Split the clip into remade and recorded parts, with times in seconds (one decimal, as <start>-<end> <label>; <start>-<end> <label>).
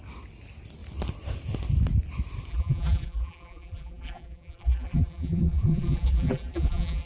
0.0-2.5 recorded; 2.5-7.1 remade